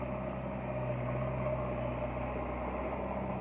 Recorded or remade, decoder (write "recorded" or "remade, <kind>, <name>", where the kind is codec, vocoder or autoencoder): recorded